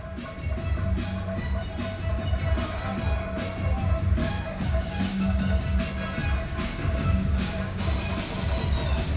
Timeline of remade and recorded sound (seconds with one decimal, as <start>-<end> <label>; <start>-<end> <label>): 0.0-4.2 recorded; 4.2-5.8 remade; 5.8-6.5 recorded; 6.5-7.9 remade; 7.9-9.2 recorded